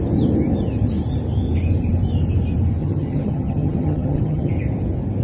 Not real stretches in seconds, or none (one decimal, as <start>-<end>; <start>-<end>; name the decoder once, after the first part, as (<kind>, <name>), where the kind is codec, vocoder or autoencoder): 2.8-4.5 (vocoder, HiFi-GAN)